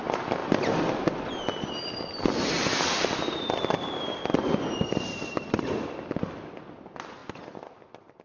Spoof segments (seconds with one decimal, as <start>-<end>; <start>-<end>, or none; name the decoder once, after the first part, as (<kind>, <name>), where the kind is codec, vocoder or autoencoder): 0.4-5.1 (vocoder, BigVGAN v2)

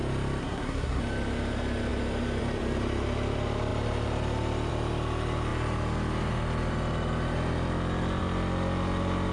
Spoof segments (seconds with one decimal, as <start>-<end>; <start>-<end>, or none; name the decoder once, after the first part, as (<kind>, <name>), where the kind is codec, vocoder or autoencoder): 0.4-1.0 (codec, SNAC)

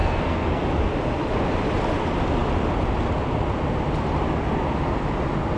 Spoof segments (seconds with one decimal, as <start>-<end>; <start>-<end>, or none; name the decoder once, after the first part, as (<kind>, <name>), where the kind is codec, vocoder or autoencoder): 0.0-0.6 (codec, SNAC)

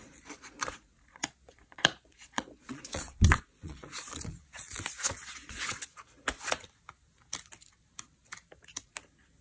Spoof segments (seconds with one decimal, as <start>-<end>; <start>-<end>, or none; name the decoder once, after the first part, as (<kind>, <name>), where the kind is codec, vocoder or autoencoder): 0.0-5.9 (vocoder, Vocos)

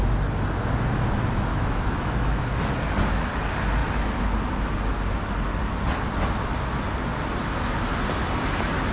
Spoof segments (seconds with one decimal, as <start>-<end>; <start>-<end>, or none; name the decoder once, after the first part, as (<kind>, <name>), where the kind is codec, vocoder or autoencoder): 1.5-2.4 (autoencoder, DAC-VAE)